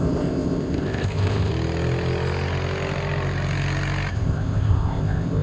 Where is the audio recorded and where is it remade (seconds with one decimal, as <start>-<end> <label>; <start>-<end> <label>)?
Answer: 0.0-1.5 remade; 1.5-4.1 recorded; 4.1-5.4 remade